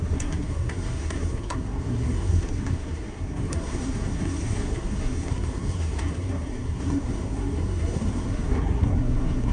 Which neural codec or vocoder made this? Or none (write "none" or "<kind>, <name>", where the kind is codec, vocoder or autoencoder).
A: codec, SNAC